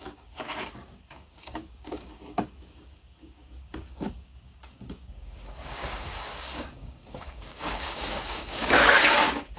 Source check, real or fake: fake